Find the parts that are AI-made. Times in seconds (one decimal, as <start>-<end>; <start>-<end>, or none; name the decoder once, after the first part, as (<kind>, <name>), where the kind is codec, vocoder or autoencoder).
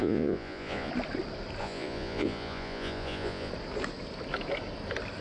0.0-0.9 (vocoder, Vocos); 1.6-3.5